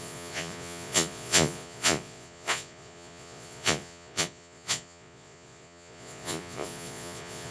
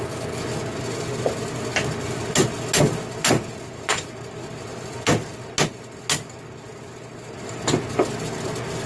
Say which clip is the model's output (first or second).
first